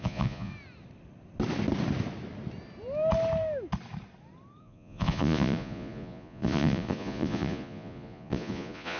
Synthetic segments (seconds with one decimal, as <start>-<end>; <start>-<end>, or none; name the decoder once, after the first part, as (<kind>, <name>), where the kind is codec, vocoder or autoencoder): 0.0-0.5 (vocoder, Vocos); 4.6-9.0